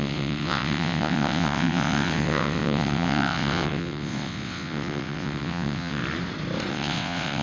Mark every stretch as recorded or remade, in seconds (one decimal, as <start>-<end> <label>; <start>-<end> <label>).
0.0-6.0 remade; 6.0-6.7 recorded; 6.7-7.4 remade

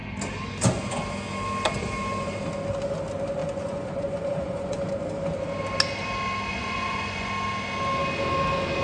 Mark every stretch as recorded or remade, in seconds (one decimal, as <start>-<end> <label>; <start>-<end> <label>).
0.0-3.4 recorded; 3.4-4.9 remade; 4.9-6.5 recorded; 6.5-7.3 remade; 7.3-8.8 recorded

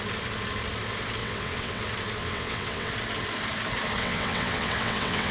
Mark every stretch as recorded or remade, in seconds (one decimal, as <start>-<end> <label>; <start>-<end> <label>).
0.0-1.2 recorded; 1.2-1.8 remade; 1.8-2.2 recorded; 2.2-2.9 remade; 2.9-4.0 recorded; 4.0-5.3 remade

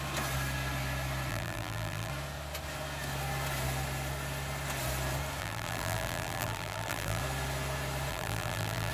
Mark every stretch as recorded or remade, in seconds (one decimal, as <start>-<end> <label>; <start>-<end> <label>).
0.0-1.3 recorded; 1.3-2.1 remade; 2.1-5.4 recorded; 5.4-7.2 remade; 7.2-8.1 recorded; 8.1-8.9 remade

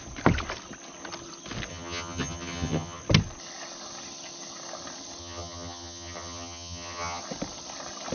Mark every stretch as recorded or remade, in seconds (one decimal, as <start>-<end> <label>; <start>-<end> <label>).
0.0-1.7 recorded; 1.7-3.0 remade; 3.0-5.2 recorded; 5.2-7.2 remade; 7.2-8.1 recorded

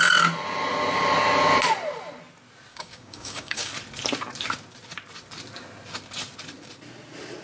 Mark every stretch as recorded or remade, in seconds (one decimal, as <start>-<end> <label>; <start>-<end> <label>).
0.0-2.7 recorded; 2.7-3.7 remade; 3.7-7.4 recorded